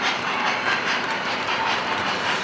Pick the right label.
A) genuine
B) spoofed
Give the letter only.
B